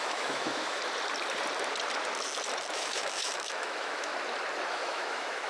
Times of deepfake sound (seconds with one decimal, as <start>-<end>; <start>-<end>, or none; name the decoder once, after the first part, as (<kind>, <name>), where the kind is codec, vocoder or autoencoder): 0.0-0.8 (autoencoder, DAC-VAE); 2.7-4.1; 4.7-5.5